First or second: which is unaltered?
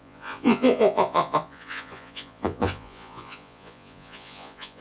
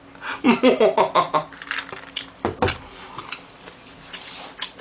second